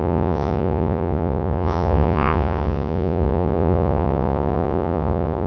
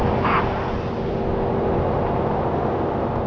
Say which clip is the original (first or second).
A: second